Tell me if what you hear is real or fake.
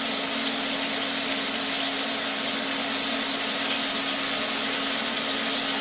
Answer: real